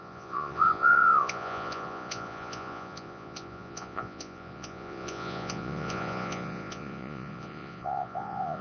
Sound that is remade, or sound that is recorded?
remade